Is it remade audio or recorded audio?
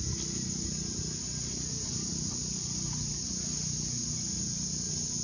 recorded